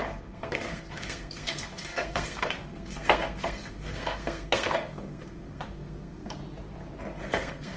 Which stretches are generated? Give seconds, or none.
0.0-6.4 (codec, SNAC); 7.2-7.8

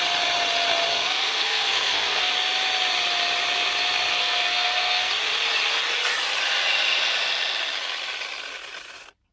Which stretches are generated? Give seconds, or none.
0.9-2.3 (codec, SNAC); 4.1-5.1

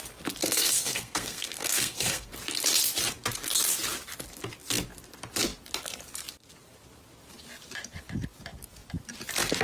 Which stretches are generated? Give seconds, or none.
0.4-2.3 (codec, SNAC)

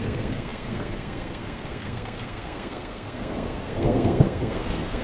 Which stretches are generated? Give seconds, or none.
0.0-5.0 (codec, SNAC)

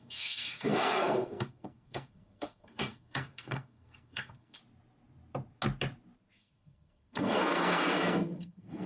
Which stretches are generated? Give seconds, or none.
0.0-4.6 (codec, SNAC); 6.4-8.9

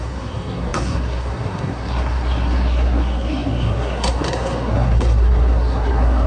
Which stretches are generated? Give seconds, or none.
0.0-6.3 (codec, SNAC)